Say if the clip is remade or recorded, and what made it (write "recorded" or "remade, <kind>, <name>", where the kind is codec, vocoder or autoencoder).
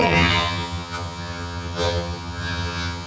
remade, vocoder, HiFi-GAN